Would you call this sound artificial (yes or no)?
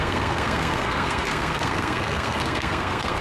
yes